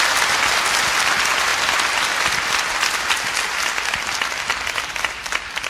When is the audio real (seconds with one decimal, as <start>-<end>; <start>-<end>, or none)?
0.0-5.7